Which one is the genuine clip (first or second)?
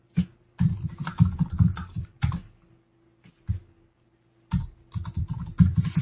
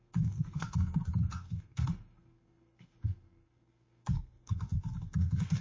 first